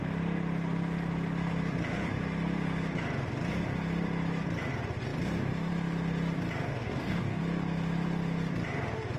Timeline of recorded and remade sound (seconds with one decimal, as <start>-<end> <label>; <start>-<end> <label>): 0.0-6.7 recorded; 6.7-7.4 remade; 7.4-9.2 recorded